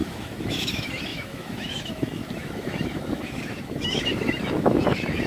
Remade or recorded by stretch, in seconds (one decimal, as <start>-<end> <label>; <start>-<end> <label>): 0.0-5.3 remade